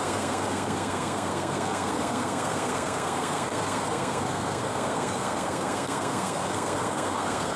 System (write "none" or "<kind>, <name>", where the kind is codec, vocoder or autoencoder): codec, SNAC